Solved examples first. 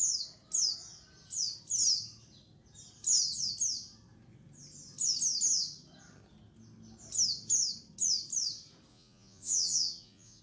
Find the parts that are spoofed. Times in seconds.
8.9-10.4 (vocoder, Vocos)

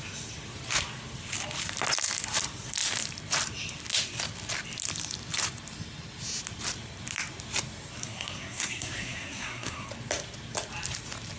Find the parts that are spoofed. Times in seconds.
8.0-9.9 (codec, SNAC)